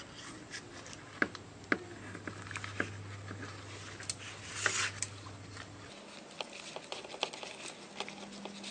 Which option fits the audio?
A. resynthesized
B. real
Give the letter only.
B